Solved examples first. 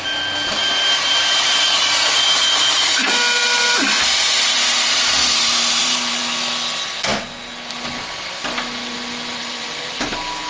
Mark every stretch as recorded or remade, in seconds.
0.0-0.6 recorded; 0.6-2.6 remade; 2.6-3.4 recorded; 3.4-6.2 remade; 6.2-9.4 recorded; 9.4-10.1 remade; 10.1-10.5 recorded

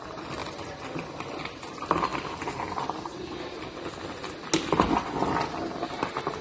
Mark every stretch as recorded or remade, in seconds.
0.0-0.4 recorded; 0.4-1.6 remade; 1.6-6.4 recorded

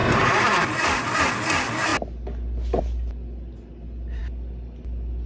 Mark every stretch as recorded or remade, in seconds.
0.0-1.3 remade; 1.3-5.3 recorded

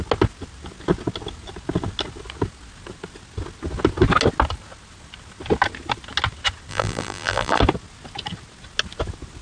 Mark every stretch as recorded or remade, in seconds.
0.0-6.7 recorded; 6.7-7.6 remade; 7.6-9.4 recorded